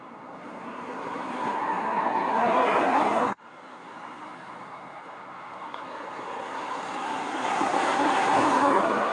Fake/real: fake